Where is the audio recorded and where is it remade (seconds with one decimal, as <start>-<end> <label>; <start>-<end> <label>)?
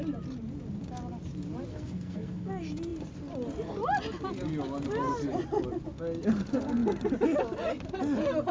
0.0-1.7 recorded; 1.7-2.5 remade; 2.5-8.5 recorded